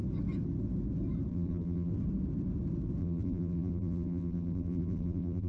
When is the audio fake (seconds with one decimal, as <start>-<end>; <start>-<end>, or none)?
1.3-1.9; 3.0-5.5

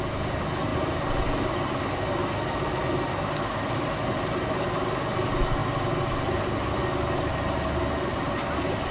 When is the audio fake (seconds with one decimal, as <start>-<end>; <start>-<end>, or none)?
none

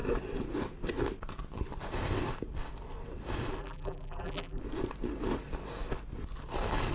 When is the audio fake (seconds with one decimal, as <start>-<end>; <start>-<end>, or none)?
3.6-4.6

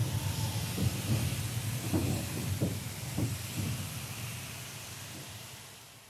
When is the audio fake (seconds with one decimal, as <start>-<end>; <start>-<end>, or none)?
2.0-6.1

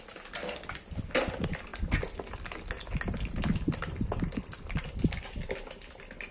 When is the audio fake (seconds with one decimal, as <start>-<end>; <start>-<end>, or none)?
none